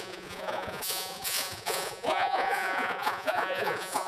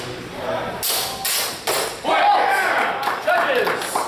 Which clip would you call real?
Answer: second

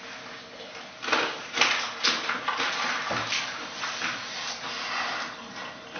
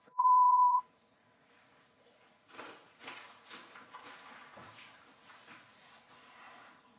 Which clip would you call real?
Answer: first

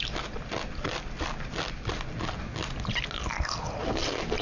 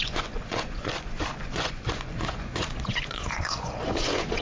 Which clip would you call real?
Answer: first